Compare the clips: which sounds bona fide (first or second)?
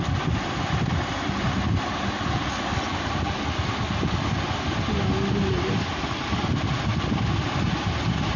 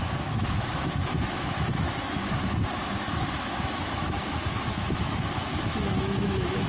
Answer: first